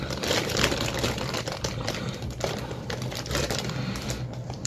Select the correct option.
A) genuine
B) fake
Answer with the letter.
B